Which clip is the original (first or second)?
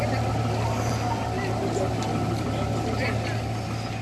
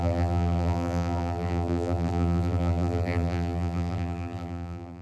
first